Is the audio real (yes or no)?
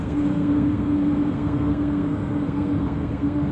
no